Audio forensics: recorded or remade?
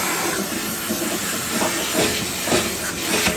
recorded